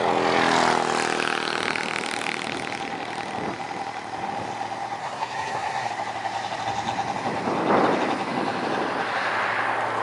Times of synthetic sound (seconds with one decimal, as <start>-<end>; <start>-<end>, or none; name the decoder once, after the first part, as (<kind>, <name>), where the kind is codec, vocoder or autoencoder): 5.0-5.9 (codec, SNAC)